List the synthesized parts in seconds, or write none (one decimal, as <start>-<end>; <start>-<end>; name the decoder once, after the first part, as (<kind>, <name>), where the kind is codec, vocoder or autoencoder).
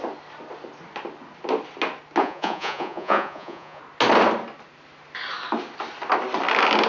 2.2-3.8 (vocoder, Vocos)